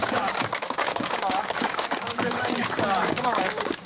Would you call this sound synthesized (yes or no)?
yes